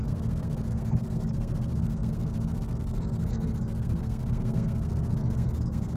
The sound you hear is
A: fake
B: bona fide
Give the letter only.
A